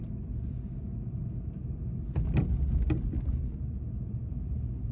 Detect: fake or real real